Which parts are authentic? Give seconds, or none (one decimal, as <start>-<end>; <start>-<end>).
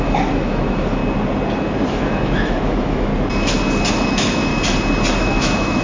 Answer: 1.0-1.9; 3.1-3.9; 4.5-5.2